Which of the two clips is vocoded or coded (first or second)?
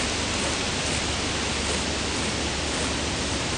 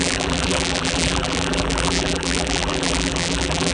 second